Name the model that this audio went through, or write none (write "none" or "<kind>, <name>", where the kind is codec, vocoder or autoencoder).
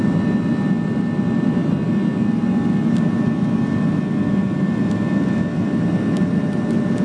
none